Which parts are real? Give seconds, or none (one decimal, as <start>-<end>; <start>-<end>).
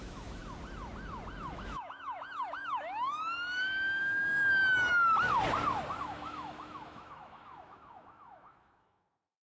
0.4-1.5; 4.6-6.0